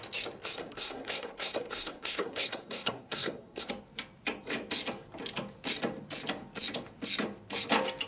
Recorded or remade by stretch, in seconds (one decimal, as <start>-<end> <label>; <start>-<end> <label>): 0.0-0.6 recorded; 0.6-3.7 remade; 3.7-8.1 recorded